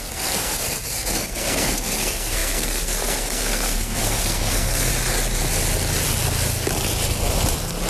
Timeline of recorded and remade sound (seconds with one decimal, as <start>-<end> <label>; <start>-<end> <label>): 0.0-4.9 remade; 4.9-7.9 recorded